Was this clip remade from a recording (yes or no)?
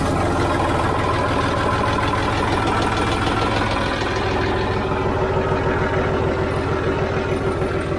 no